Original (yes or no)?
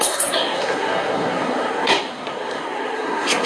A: no